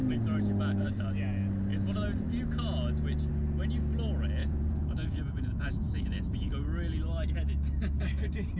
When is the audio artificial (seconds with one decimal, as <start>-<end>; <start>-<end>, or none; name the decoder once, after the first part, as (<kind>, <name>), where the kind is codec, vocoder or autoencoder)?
4.4-6.5 (vocoder, Vocos)